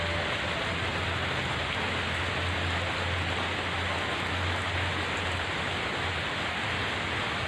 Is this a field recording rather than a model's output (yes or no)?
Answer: yes